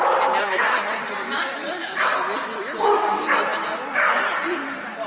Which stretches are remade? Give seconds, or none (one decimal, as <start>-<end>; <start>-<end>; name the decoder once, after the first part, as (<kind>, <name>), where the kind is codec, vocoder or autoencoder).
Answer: 0.4-1.0 (codec, SNAC)